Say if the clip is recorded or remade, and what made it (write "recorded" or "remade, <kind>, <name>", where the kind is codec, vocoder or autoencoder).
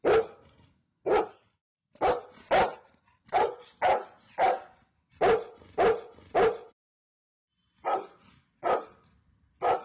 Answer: recorded